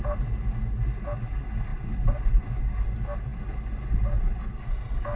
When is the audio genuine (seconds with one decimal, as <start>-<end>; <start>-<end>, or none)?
0.0-5.2